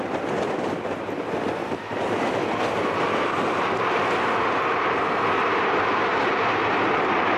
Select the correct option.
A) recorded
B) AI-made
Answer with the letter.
A